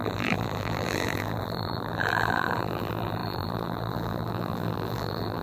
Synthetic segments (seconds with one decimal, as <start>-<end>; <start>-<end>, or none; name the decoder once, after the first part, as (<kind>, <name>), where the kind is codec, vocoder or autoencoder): 0.0-5.4 (vocoder, BigVGAN v2)